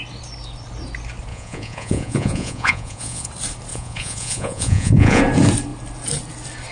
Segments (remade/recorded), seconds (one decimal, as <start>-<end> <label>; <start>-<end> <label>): 0.0-1.3 recorded; 1.3-3.3 remade; 3.3-3.7 recorded; 3.7-5.2 remade; 5.2-6.7 recorded